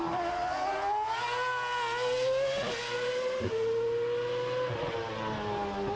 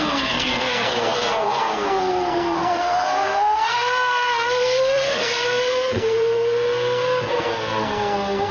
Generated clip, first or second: second